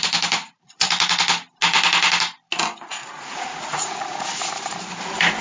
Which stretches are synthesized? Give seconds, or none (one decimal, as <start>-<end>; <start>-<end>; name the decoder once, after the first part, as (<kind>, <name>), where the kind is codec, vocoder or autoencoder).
0.4-1.2 (vocoder, Vocos); 3.0-4.5